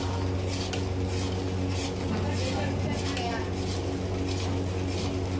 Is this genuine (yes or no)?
yes